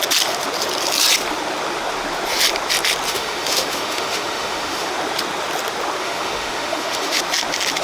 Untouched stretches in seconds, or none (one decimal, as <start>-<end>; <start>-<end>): 0.0-3.1; 4.9-6.0; 7.2-7.8